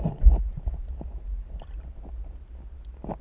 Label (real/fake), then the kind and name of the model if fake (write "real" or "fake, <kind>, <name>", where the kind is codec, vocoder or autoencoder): real